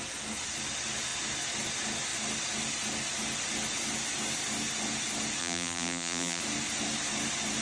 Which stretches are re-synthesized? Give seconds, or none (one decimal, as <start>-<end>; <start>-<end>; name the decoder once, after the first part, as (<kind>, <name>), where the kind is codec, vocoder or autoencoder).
5.4-6.4 (vocoder, BigVGAN v2)